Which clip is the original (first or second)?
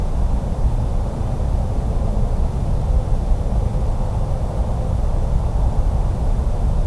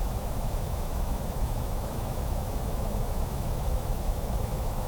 first